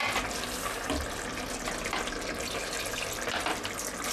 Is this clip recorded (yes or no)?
yes